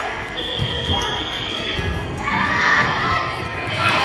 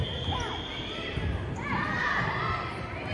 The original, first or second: second